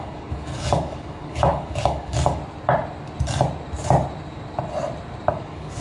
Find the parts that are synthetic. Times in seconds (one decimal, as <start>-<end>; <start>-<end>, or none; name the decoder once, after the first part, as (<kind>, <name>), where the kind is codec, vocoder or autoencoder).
0.0-2.4 (codec, DAC); 5.3-5.8